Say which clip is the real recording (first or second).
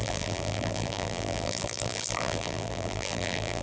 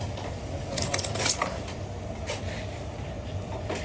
second